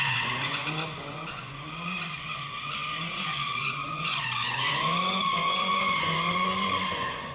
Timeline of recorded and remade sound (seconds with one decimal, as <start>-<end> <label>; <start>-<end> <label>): 0.0-7.3 remade